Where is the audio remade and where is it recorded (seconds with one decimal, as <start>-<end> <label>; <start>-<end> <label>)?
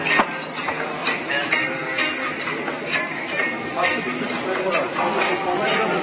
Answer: 0.0-1.0 recorded; 1.0-4.6 remade; 4.6-6.0 recorded